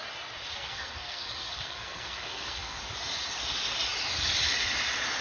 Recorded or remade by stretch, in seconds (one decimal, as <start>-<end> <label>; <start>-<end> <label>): 0.0-0.5 recorded; 0.5-2.8 remade; 2.8-5.2 recorded